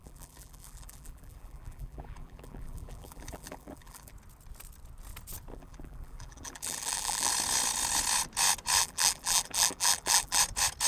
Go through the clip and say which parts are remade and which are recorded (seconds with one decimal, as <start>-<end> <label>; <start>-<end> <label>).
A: 0.0-4.1 remade; 4.1-5.5 recorded; 5.5-7.3 remade; 7.3-8.8 recorded; 8.8-10.4 remade; 10.4-10.9 recorded